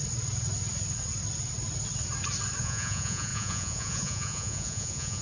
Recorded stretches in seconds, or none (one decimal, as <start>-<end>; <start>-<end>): 0.0-2.6